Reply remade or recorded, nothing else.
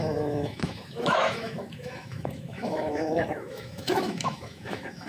remade